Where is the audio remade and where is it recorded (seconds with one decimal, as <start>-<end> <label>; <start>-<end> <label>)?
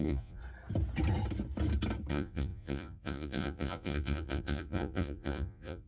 0.0-0.4 remade; 0.4-2.1 recorded; 2.1-5.9 remade